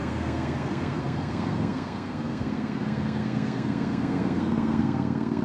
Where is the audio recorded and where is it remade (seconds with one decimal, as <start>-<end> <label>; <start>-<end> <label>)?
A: 0.0-5.4 remade